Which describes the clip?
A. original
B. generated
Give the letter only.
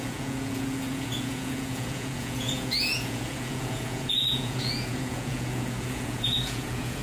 B